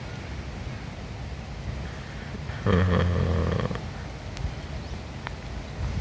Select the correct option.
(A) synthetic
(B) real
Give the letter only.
B